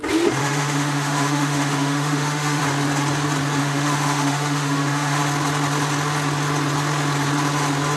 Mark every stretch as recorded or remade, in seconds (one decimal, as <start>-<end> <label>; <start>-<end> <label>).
0.0-0.4 recorded; 0.4-2.6 remade; 2.6-3.6 recorded; 3.6-5.2 remade; 5.2-8.0 recorded